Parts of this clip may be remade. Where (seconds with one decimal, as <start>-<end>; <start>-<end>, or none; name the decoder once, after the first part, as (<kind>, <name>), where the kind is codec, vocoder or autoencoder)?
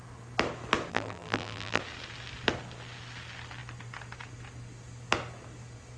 0.9-1.8 (vocoder, BigVGAN v2)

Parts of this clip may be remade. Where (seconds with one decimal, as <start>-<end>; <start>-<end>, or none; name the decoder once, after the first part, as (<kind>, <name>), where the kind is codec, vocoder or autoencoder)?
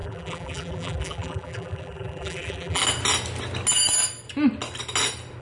0.0-2.8 (vocoder, BigVGAN v2)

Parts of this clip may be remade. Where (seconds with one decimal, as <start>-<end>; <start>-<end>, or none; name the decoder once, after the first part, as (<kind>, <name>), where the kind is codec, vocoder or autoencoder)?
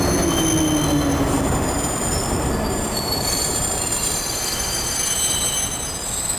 1.1-4.9 (vocoder, BigVGAN v2)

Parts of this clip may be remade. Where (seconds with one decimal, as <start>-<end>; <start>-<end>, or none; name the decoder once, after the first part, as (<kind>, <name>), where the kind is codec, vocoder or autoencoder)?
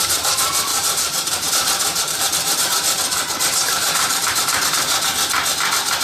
0.7-1.5 (vocoder, BigVGAN v2); 1.9-4.4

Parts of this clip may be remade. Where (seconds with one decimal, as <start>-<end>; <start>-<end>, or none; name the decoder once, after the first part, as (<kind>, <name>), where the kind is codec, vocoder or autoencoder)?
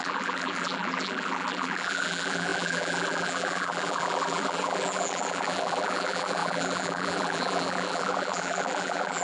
0.0-9.2 (vocoder, BigVGAN v2)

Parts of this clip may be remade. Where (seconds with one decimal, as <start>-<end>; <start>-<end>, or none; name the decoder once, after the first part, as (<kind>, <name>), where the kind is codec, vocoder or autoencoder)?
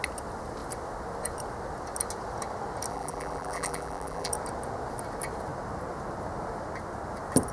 2.9-4.3 (vocoder, BigVGAN v2)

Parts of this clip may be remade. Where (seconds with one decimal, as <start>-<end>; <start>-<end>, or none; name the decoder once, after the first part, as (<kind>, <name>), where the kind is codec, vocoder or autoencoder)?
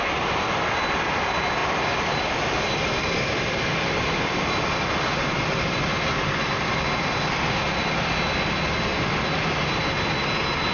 1.6-6.4 (vocoder, BigVGAN v2)